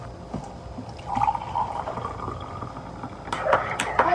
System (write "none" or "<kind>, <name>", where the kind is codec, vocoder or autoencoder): none